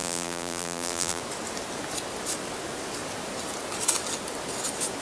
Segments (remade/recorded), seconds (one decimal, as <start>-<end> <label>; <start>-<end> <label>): 0.0-1.2 remade; 1.2-5.0 recorded